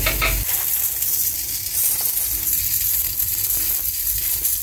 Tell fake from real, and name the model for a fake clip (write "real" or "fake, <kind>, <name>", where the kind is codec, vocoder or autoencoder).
real